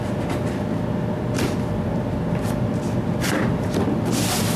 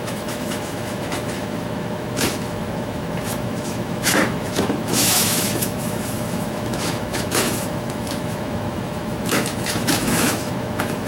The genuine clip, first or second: first